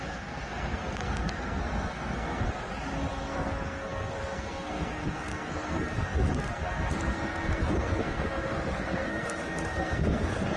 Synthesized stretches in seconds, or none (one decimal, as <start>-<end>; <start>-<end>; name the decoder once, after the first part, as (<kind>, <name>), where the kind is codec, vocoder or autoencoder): 0.0-2.7 (codec, SNAC); 3.2-10.6